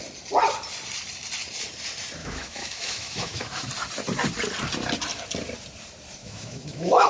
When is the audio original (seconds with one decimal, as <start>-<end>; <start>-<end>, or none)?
0.0-2.2; 3.7-6.2

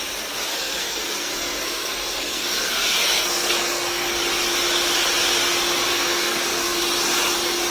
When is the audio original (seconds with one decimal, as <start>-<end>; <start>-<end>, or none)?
0.0-0.5; 4.2-5.9; 6.8-7.7

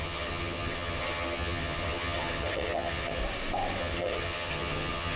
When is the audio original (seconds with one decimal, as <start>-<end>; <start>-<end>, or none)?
3.2-3.8

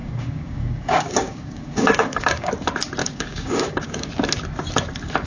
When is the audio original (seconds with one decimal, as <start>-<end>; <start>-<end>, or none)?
2.5-3.0; 4.1-5.3

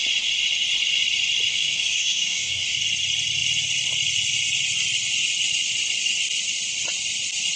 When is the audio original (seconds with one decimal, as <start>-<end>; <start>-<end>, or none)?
0.0-1.5; 2.8-7.6